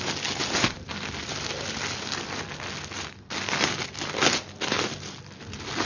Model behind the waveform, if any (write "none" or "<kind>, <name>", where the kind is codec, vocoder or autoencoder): none